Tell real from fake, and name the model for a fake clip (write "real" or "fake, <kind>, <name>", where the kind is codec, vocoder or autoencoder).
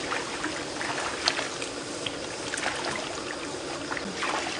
real